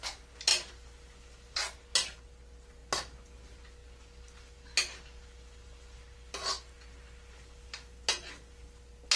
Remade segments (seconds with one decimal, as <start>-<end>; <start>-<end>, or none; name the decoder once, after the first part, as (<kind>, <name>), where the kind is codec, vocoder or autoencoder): none